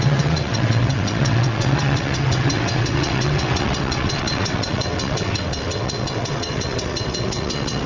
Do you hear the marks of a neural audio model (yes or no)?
yes